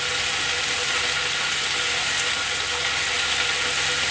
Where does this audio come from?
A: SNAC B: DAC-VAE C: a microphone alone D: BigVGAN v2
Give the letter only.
C